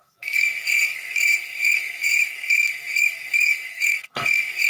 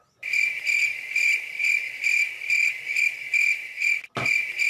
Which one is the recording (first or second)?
second